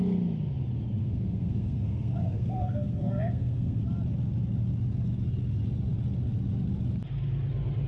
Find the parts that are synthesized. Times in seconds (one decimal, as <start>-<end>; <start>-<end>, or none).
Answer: 1.0-3.8